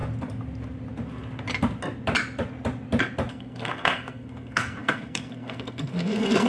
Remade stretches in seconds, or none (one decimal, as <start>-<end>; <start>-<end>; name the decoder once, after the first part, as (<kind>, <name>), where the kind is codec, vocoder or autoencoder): 3.3-6.5 (codec, SNAC)